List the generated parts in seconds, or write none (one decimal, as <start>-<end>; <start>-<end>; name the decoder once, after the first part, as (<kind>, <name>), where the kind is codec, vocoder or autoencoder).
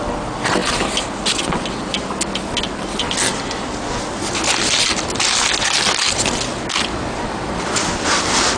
none